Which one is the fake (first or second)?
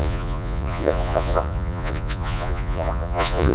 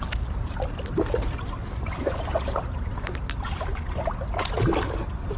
first